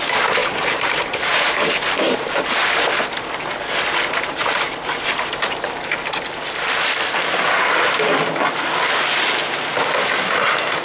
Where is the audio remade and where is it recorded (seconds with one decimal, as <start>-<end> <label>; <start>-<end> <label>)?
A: 0.0-0.4 recorded; 0.4-2.4 remade; 2.4-10.8 recorded